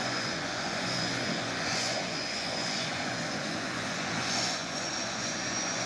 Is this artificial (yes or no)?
yes